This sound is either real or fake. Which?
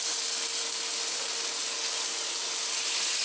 real